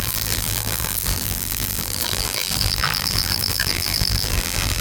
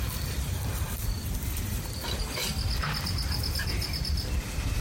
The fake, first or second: first